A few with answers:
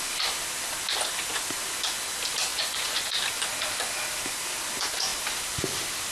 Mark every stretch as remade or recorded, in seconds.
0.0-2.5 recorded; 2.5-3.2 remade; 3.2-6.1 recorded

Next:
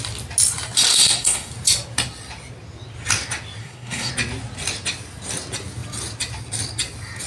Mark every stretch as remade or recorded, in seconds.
0.0-0.9 recorded; 0.9-1.5 remade; 1.5-3.6 recorded; 3.6-4.1 remade; 4.1-7.3 recorded